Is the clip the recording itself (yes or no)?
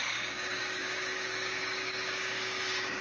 no